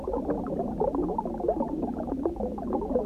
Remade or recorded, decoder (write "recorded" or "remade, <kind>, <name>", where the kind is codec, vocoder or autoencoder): recorded